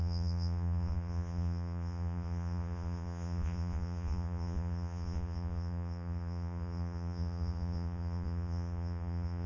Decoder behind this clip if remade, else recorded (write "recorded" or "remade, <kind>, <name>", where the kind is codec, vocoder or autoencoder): remade, vocoder, Vocos